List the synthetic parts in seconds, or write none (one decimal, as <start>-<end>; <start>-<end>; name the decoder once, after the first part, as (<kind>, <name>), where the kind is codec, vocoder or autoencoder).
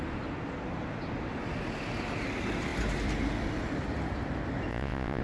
4.7-5.2 (vocoder, Vocos)